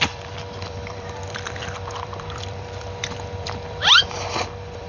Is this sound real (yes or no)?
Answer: no